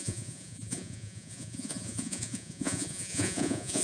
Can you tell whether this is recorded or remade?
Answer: remade